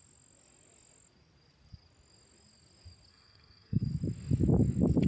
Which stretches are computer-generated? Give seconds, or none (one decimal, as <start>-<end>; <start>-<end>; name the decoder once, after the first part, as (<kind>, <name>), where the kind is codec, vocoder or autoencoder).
3.1-3.8 (codec, SNAC)